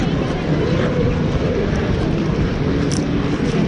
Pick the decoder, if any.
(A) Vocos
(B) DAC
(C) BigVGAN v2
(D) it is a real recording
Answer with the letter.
D